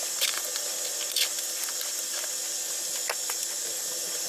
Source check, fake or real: real